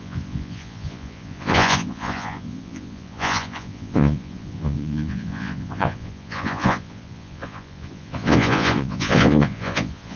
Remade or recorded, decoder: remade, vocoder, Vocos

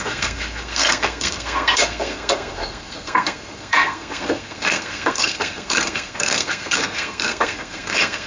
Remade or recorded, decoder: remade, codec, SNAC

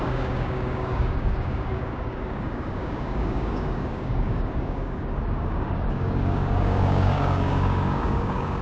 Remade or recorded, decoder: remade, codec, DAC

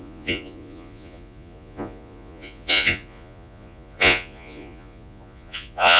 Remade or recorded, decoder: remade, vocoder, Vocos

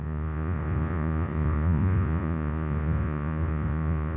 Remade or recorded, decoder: remade, vocoder, Vocos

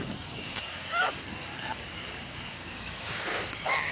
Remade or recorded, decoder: remade, codec, DAC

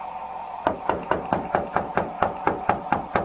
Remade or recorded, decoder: recorded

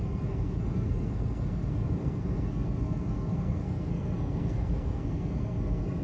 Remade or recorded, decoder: remade, codec, SNAC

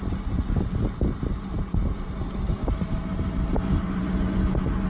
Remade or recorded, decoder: recorded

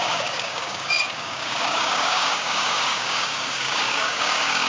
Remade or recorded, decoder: remade, codec, DAC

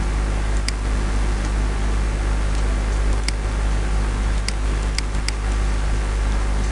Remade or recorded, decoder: recorded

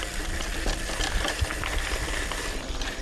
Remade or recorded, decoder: recorded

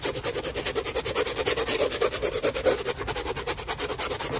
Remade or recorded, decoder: recorded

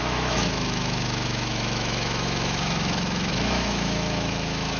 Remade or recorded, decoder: remade, autoencoder, DAC-VAE